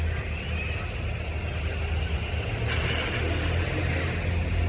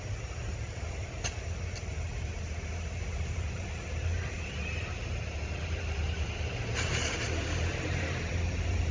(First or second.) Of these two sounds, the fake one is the second